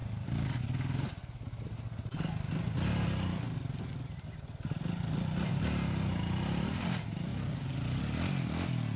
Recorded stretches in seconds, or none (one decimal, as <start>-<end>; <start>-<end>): 0.0-9.0